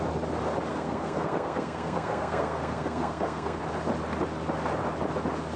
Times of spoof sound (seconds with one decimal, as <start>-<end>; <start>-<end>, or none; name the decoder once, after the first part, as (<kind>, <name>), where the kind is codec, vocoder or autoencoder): 0.7-3.6 (codec, SNAC)